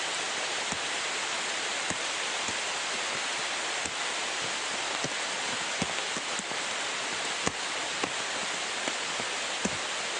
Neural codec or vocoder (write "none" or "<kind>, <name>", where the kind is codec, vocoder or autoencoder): none